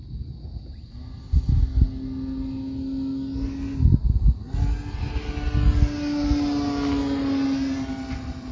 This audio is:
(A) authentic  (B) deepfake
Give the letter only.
A